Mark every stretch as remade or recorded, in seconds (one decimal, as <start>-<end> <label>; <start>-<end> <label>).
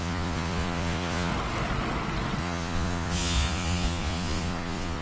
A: 0.0-1.3 remade; 1.3-2.4 recorded; 2.4-5.0 remade